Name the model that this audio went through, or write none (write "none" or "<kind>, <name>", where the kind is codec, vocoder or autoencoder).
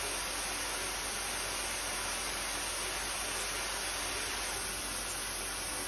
none